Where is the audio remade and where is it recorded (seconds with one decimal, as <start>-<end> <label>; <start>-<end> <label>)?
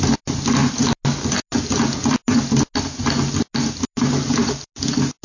0.0-5.2 recorded